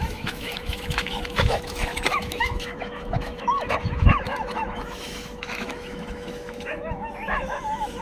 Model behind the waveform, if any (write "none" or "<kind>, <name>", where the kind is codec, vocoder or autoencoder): autoencoder, DAC-VAE